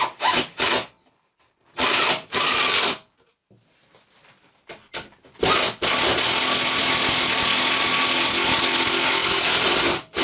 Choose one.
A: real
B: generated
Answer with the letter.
A